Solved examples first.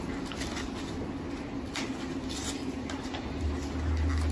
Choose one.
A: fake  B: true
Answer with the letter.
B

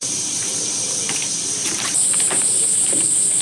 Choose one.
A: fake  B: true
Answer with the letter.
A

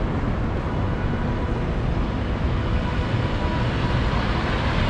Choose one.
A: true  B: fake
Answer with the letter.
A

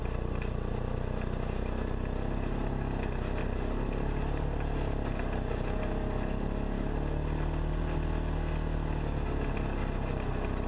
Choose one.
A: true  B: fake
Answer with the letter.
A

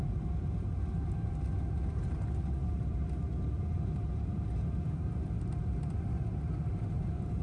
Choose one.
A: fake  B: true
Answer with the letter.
A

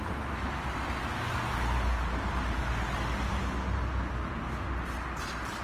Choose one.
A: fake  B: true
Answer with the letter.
B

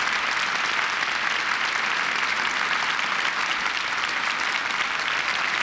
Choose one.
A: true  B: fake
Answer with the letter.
A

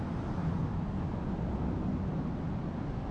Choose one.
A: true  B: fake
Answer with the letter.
A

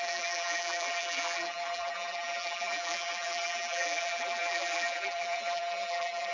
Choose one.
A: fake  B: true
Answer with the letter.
A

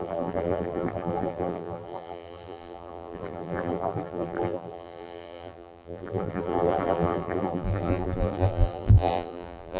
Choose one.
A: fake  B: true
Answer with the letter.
A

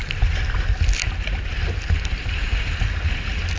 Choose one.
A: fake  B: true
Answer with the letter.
B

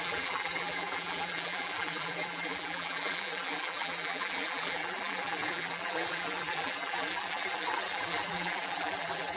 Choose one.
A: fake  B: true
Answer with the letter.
A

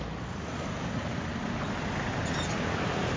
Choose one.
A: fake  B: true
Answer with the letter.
B